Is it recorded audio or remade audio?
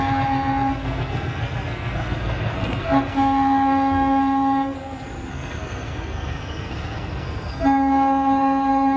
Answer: remade